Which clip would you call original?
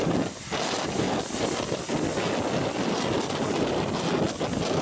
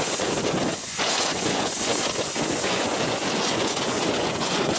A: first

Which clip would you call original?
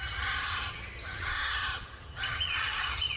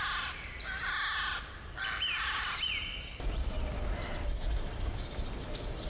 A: second